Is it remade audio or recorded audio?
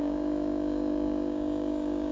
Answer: remade